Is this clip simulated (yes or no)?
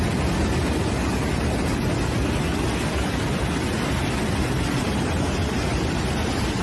no